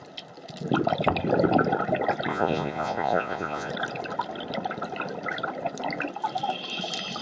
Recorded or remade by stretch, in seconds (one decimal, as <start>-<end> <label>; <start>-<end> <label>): 0.0-2.3 recorded; 2.3-3.7 remade; 3.7-7.2 recorded

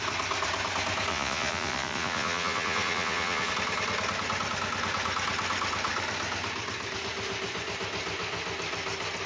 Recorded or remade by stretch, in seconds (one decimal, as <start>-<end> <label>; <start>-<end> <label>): 0.0-1.1 recorded; 1.1-3.5 remade; 3.5-9.3 recorded

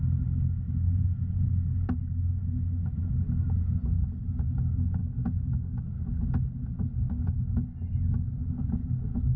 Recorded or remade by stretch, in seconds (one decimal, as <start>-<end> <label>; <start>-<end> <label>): 0.0-9.4 recorded

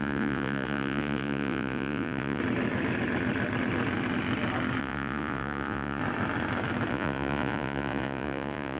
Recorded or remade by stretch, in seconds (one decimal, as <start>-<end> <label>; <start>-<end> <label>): 0.0-2.4 remade; 2.4-4.8 recorded; 4.8-6.0 remade; 6.0-6.9 recorded; 6.9-8.8 remade

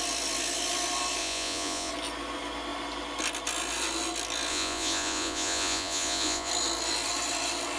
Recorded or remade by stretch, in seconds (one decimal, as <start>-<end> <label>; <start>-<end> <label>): 0.0-1.2 recorded; 1.2-1.9 remade; 1.9-4.5 recorded; 4.5-6.5 remade; 6.5-7.8 recorded

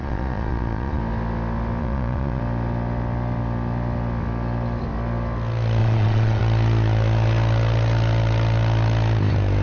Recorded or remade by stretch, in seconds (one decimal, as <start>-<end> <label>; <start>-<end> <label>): 0.0-1.0 remade; 1.0-1.8 recorded; 1.8-2.4 remade; 2.4-5.8 recorded; 5.8-6.4 remade; 6.4-9.6 recorded

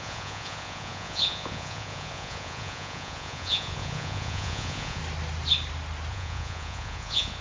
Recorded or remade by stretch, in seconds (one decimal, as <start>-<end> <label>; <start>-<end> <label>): 0.0-5.0 remade; 5.0-6.1 recorded; 6.1-7.4 remade

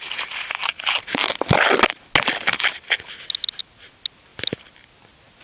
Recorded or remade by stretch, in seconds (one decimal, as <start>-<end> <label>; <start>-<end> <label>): 0.0-5.4 recorded